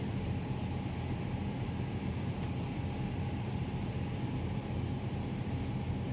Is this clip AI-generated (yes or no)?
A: no